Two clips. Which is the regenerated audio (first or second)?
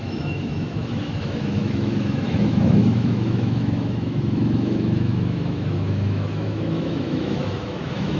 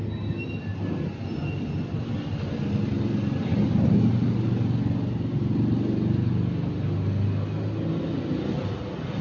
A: first